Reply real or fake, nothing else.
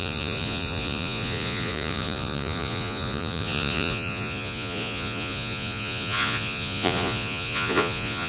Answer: fake